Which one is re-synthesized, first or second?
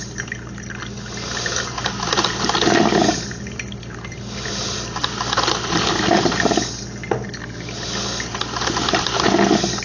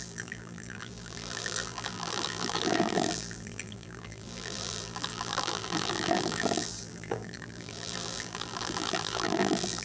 second